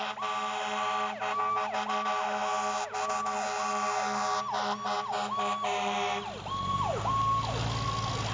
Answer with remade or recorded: recorded